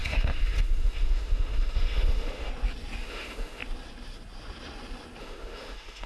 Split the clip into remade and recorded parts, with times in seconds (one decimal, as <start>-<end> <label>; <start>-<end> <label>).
0.0-2.5 remade; 2.5-3.0 recorded; 3.0-3.6 remade; 3.6-5.2 recorded; 5.2-6.1 remade